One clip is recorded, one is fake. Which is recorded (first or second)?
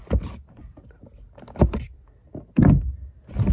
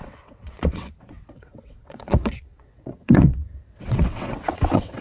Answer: first